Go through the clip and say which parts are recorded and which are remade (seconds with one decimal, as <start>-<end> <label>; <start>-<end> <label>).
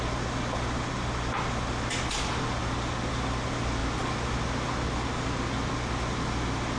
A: 0.0-6.8 recorded